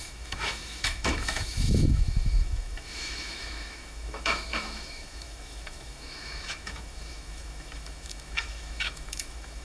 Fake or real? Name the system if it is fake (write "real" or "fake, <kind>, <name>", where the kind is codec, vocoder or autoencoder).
fake, autoencoder, DAC-VAE